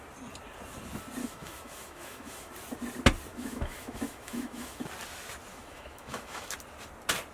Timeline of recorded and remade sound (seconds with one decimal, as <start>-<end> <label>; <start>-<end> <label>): 0.0-1.2 recorded; 1.2-2.5 remade; 2.5-3.3 recorded; 3.3-4.9 remade; 4.9-5.5 recorded; 5.5-6.5 remade; 6.5-7.3 recorded